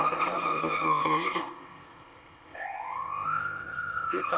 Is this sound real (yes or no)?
no